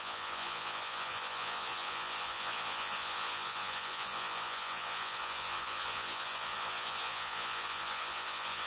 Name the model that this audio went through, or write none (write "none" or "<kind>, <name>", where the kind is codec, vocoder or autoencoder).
vocoder, Vocos